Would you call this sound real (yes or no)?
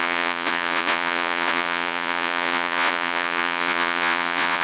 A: no